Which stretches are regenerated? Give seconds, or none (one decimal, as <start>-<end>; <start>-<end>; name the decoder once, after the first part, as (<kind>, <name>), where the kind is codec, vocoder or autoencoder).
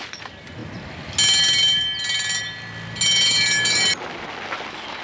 none